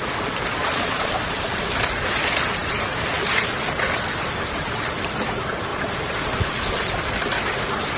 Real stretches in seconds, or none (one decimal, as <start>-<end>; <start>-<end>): 0.0-0.6; 1.1-8.0